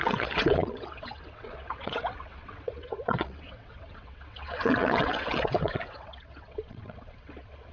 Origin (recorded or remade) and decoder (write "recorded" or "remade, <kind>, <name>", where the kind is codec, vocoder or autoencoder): remade, vocoder, WaveNeXt